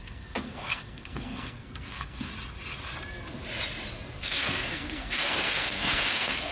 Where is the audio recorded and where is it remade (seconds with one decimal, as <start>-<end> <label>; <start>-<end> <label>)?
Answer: 0.0-2.3 remade; 2.3-4.2 recorded; 4.2-6.5 remade

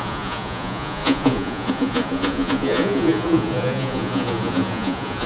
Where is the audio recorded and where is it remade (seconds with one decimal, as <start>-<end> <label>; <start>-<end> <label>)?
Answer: 0.0-5.3 remade

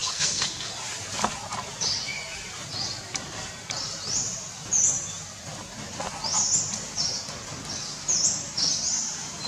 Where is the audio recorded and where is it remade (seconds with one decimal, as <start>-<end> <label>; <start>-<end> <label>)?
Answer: 0.0-0.7 remade; 0.7-9.5 recorded